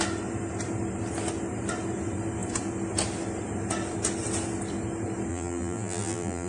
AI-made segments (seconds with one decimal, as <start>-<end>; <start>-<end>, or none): 5.3-6.5